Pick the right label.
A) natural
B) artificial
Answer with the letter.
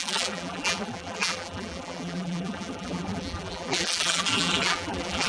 B